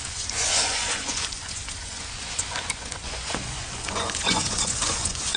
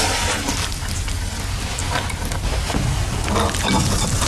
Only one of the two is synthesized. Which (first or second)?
first